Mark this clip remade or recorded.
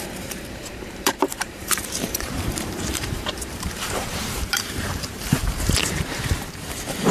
remade